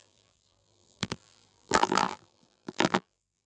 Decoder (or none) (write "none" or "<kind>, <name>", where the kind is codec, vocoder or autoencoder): vocoder, BigVGAN v2